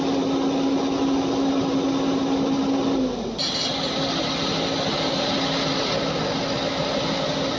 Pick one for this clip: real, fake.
real